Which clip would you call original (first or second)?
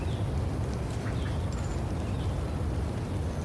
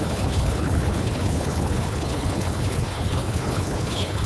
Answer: first